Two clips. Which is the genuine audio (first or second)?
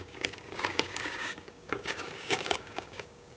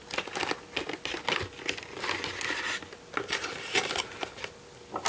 second